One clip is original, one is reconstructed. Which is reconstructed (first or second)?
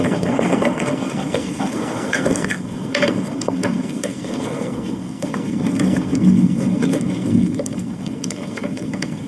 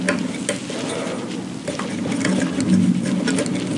first